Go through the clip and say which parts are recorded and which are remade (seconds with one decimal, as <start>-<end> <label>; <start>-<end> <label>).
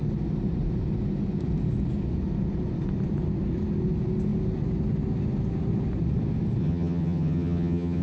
0.0-6.6 recorded; 6.6-8.0 remade